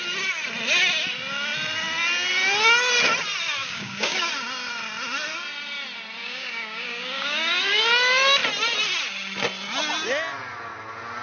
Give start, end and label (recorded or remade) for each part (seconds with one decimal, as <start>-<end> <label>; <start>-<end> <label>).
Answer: 0.0-3.6 recorded; 3.6-4.3 remade; 4.3-6.2 recorded; 6.2-7.8 remade; 7.8-11.2 recorded